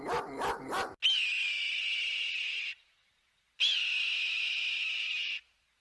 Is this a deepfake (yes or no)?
no